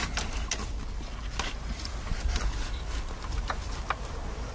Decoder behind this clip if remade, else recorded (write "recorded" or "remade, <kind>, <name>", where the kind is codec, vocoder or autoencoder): recorded